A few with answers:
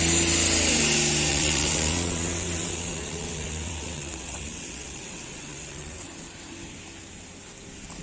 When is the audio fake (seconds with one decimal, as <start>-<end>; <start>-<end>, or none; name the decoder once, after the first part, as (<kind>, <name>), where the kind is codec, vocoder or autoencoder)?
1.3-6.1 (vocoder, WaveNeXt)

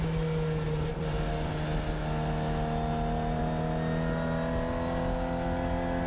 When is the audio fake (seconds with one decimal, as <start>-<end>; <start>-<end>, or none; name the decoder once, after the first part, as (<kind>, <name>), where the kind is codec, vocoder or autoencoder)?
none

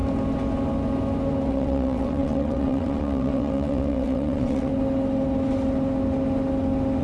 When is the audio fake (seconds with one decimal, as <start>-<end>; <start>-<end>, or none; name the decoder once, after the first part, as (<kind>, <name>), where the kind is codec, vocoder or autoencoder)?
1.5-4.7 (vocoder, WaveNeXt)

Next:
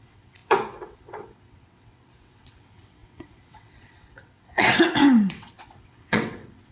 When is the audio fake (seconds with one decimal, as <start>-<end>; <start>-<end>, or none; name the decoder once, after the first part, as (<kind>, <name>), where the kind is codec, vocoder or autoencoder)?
0.0-6.7 (vocoder, WaveNeXt)

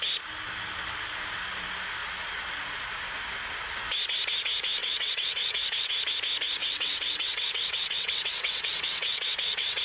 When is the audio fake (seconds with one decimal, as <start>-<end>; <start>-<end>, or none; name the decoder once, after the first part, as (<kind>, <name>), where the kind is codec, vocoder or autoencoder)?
4.8-5.9 (vocoder, WaveNeXt); 6.6-9.8

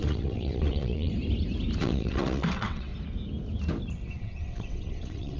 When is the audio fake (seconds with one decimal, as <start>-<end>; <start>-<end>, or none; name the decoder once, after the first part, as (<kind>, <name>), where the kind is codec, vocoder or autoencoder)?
0.0-1.1 (vocoder, WaveNeXt); 1.8-2.9; 4.1-5.4

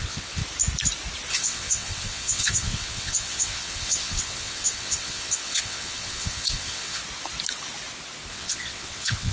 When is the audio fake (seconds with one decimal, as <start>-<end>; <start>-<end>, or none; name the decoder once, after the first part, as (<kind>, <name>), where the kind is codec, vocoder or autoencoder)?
0.0-0.4 (vocoder, WaveNeXt); 1.3-7.0; 8.3-9.3

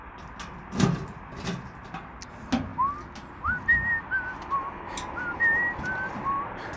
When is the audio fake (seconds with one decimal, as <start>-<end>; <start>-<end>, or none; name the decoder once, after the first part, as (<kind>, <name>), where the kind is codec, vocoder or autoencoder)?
none